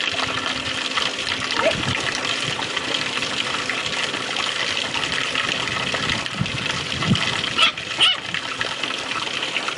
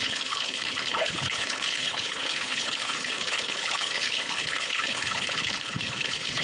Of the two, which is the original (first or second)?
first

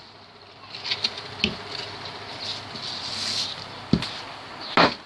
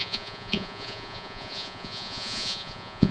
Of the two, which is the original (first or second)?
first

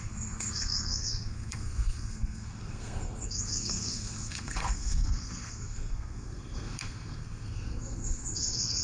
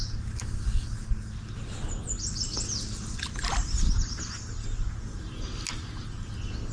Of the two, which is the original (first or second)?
second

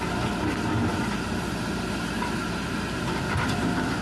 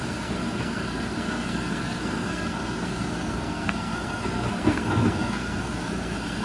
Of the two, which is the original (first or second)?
first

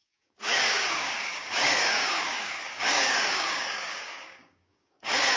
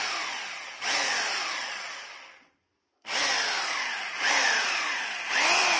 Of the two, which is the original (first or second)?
second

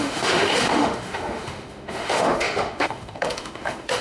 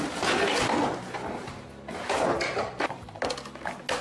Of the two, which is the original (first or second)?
second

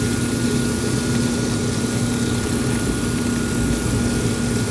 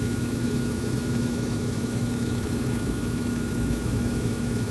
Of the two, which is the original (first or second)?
first